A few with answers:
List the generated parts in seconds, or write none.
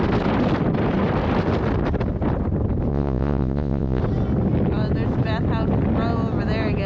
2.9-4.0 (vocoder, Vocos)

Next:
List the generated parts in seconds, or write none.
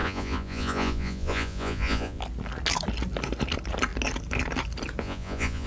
0.0-2.2 (vocoder, Vocos); 5.0-5.7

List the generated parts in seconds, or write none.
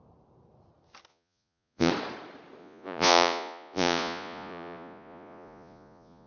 1.1-1.9 (vocoder, Vocos); 2.6-6.3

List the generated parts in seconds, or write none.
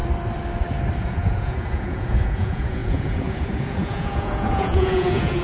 1.0-5.4 (vocoder, Vocos)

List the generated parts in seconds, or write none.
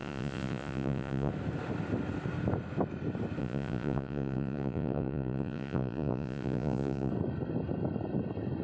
0.0-1.3 (vocoder, Vocos); 3.4-7.1